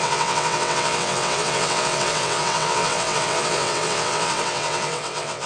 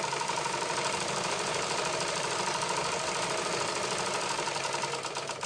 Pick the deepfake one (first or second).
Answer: first